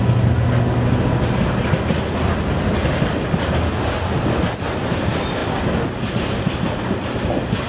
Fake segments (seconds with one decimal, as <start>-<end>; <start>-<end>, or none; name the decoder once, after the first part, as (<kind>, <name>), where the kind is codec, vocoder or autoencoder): none